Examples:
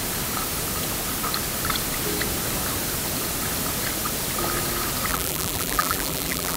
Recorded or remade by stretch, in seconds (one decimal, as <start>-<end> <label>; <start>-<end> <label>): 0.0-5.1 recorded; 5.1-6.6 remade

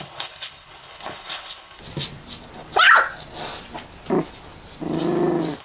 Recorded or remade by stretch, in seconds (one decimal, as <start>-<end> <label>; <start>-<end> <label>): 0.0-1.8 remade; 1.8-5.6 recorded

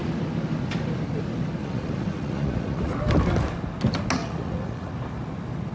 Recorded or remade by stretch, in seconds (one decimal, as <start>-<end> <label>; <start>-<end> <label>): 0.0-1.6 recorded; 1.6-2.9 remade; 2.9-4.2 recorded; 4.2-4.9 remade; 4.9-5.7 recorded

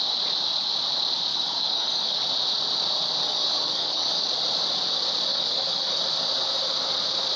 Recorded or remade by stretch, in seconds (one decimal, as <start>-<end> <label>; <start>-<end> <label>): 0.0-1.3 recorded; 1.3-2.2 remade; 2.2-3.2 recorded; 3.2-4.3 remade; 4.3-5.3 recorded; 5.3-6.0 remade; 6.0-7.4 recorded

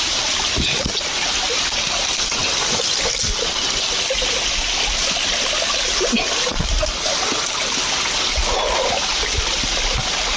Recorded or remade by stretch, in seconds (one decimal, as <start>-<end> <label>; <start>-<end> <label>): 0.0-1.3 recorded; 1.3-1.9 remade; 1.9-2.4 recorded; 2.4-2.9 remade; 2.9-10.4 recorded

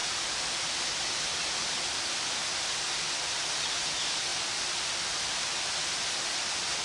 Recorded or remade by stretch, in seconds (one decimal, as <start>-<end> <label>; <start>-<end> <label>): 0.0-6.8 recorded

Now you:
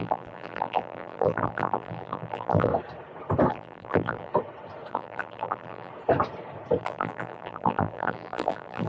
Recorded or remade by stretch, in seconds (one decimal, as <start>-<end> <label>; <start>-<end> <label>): 0.0-2.7 remade; 2.7-3.5 recorded; 3.5-4.3 remade; 4.3-4.9 recorded; 4.9-5.9 remade; 5.9-6.8 recorded; 6.8-8.9 remade